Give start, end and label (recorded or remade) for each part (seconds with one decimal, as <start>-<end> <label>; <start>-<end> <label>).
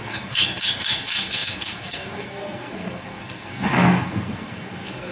0.0-5.1 remade